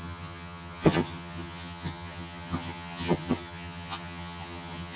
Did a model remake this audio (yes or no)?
yes